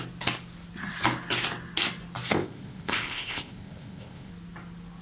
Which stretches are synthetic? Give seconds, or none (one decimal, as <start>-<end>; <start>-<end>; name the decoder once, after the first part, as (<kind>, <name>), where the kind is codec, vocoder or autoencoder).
2.3-4.3 (codec, ZipCodec)